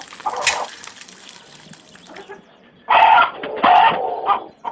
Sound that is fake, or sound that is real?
real